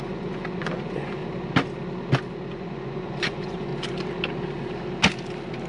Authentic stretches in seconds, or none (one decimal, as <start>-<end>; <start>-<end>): 1.2-2.5; 3.7-5.7